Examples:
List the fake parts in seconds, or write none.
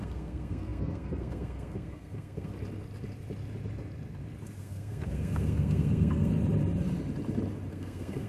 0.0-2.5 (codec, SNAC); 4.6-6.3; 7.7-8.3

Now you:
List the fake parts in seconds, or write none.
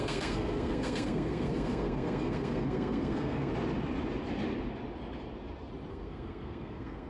0.0-3.5 (codec, SNAC); 5.9-7.1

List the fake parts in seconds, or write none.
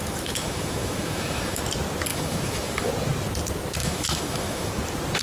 0.0-1.6 (autoencoder, DAC-VAE); 2.1-2.9; 3.8-4.7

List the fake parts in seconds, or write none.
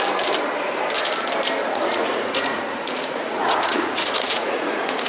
1.6-5.1 (vocoder, Vocos)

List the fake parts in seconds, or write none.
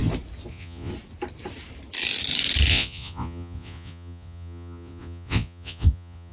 0.5-0.9 (vocoder, Vocos); 2.7-6.3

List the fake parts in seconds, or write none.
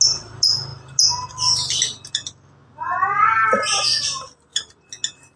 none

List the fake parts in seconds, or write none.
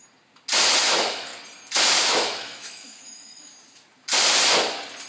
0.8-1.3 (autoencoder, DAC-VAE); 2.0-3.5